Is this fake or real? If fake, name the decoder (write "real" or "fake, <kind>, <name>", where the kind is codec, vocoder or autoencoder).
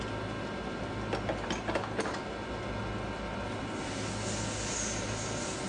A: real